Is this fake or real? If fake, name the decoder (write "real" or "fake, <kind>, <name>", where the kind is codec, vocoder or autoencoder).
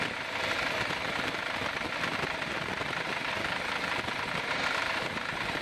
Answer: real